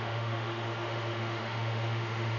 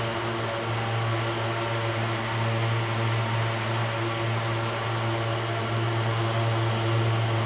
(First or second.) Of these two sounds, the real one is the second